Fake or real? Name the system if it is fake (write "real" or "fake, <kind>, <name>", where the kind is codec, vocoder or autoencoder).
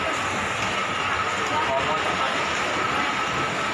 real